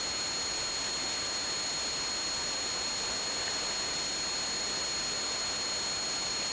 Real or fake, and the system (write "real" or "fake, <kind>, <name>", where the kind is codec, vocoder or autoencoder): real